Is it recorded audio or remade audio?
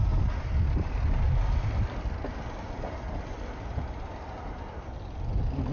recorded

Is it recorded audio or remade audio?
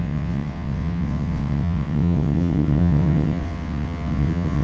remade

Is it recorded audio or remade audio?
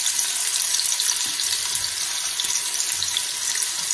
recorded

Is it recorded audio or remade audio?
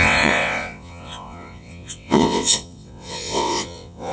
remade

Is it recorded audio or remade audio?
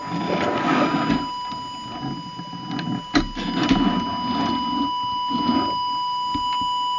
recorded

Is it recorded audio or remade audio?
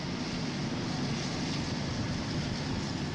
recorded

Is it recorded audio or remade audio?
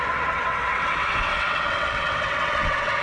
remade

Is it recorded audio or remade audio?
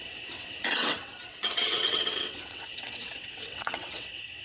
remade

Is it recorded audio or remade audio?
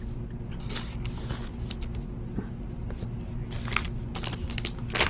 recorded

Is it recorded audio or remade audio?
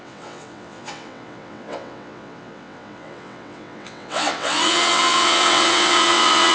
remade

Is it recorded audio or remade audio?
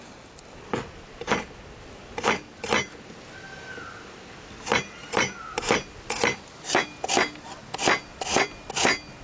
recorded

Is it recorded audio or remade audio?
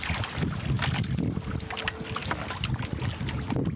recorded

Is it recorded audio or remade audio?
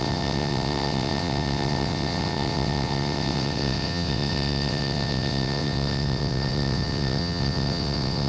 remade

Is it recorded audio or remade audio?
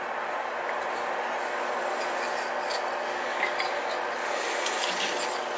recorded